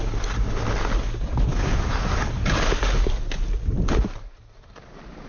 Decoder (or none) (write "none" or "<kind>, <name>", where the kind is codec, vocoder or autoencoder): none